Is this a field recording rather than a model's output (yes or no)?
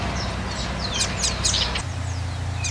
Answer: yes